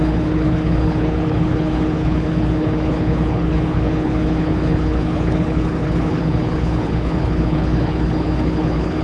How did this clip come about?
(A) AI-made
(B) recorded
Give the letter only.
A